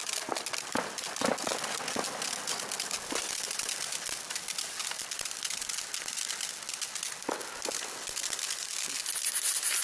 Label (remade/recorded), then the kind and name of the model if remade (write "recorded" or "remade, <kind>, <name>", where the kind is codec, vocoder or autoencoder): recorded